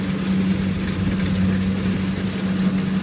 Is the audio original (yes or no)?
yes